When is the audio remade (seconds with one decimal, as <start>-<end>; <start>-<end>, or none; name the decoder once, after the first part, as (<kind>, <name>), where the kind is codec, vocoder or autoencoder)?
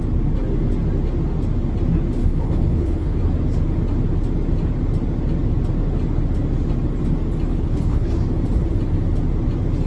2.2-3.2 (codec, HILCodec); 7.5-8.1